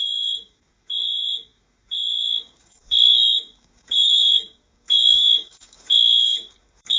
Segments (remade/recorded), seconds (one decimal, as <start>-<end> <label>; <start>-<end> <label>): 0.0-7.0 remade